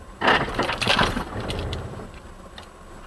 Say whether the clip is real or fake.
fake